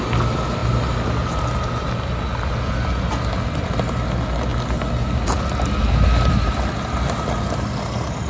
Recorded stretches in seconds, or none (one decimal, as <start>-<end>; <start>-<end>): 0.0-8.3